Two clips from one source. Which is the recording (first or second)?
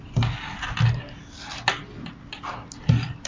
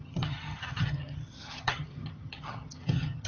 first